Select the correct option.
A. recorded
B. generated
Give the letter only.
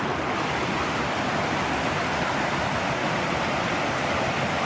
A